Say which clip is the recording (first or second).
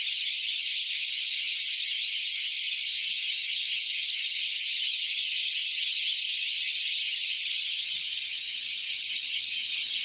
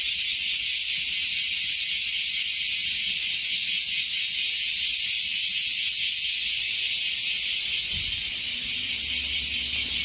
second